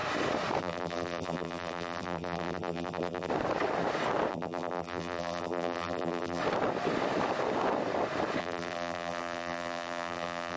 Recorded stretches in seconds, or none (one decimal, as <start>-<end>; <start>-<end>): 0.0-0.6; 3.3-4.3; 6.4-8.4